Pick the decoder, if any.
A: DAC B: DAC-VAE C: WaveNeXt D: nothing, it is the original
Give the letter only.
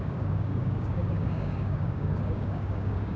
A